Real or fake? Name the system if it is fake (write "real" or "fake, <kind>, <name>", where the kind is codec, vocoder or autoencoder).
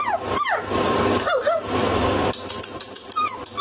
fake, vocoder, BigVGAN v2